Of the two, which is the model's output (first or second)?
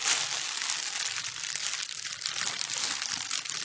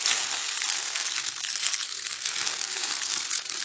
second